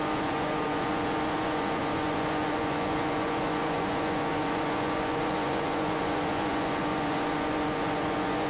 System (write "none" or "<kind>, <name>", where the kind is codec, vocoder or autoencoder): vocoder, Vocos